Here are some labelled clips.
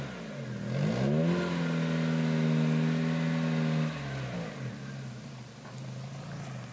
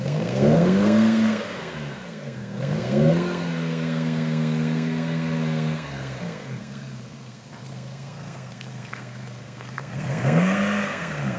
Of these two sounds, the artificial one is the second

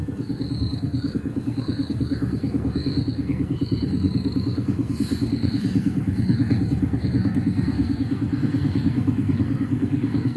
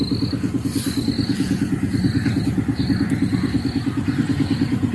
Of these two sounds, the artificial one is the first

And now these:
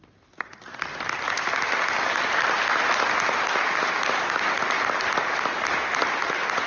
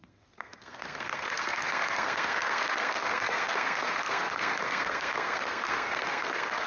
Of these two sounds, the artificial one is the second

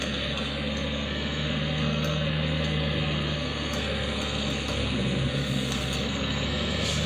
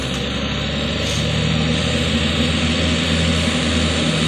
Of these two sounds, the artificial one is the first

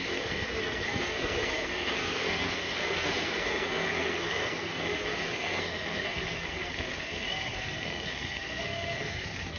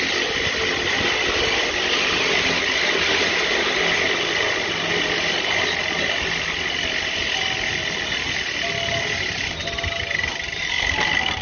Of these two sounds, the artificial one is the first